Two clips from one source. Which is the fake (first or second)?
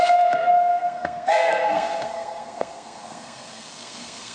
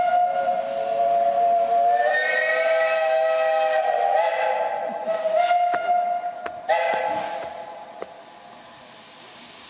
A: first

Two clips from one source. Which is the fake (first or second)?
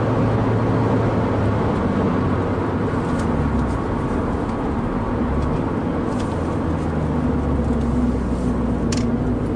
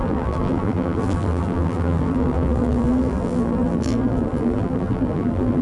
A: second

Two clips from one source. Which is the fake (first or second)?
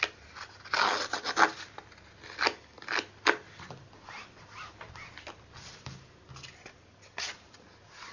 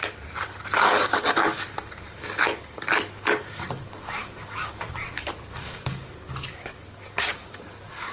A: second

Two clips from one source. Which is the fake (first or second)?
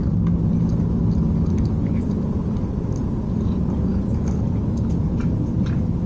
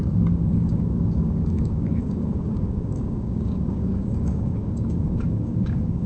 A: second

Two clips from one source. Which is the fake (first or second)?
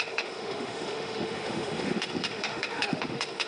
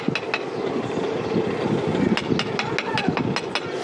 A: first